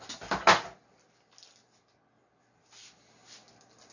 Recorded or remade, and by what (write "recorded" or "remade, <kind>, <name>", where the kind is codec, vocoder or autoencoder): recorded